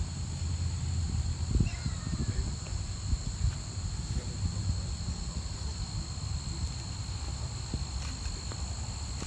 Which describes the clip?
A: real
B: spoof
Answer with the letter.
A